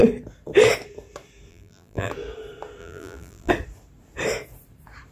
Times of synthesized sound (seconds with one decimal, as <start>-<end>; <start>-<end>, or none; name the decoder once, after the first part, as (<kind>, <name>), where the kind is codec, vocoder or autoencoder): 1.5-2.1 (vocoder, BigVGAN v2); 2.8-3.5